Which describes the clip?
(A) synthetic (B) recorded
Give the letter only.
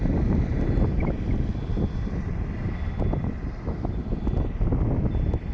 B